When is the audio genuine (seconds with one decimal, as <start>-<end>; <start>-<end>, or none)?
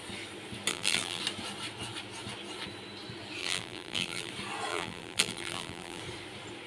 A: 0.0-0.7; 1.2-3.4; 4.3-4.7; 6.0-6.7